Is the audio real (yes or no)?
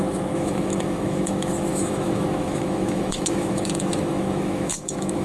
no